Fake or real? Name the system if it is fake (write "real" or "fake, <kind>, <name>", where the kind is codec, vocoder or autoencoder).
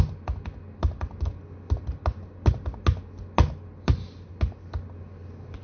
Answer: real